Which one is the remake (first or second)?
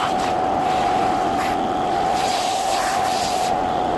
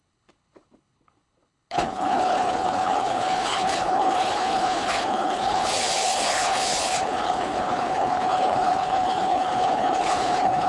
second